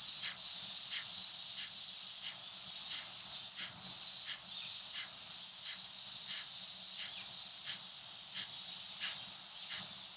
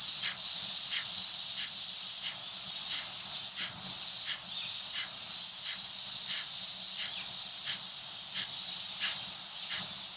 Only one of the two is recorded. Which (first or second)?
first